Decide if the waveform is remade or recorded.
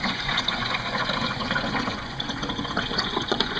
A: remade